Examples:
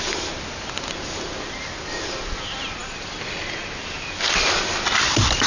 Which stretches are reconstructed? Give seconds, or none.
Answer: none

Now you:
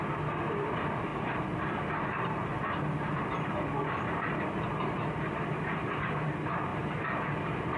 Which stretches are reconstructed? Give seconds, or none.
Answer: 1.1-5.0 (vocoder, BigVGAN v2)

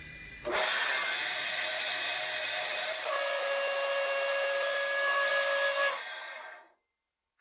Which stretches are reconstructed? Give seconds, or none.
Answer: 6.1-6.9 (vocoder, BigVGAN v2)

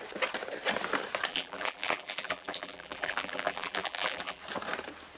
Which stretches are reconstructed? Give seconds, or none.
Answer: 1.3-4.4 (vocoder, BigVGAN v2)

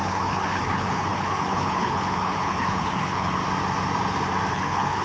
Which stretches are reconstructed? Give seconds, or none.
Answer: 0.0-3.4 (codec, HILCodec); 4.5-5.0

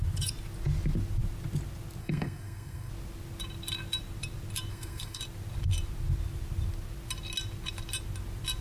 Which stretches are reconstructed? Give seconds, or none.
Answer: 2.0-2.9 (codec, SNAC); 4.7-5.2

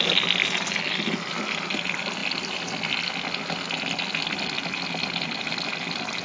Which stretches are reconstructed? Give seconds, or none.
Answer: none

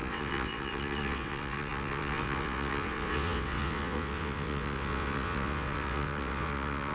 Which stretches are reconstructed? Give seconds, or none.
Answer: 0.0-6.9 (vocoder, WaveNeXt)